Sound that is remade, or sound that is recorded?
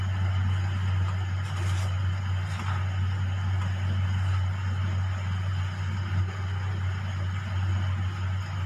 recorded